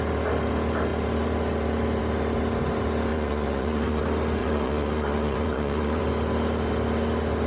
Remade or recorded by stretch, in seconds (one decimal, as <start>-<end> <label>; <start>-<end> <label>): 0.0-3.1 recorded; 3.1-4.0 remade; 4.0-4.4 recorded; 4.4-6.0 remade; 6.0-7.5 recorded